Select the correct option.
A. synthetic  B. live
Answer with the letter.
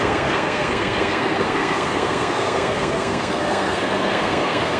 A